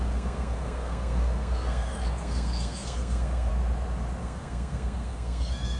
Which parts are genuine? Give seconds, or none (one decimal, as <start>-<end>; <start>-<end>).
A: 3.5-4.2